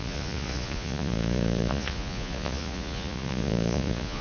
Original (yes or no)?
no